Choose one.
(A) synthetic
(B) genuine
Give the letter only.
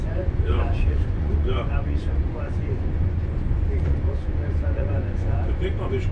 A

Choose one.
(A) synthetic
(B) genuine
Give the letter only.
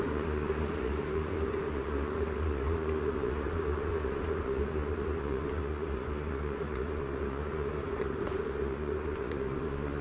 A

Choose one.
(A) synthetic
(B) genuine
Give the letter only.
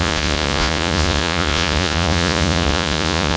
A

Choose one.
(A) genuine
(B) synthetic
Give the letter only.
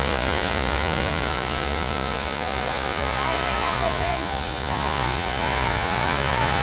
B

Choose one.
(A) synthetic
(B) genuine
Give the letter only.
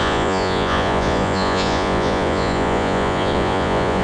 A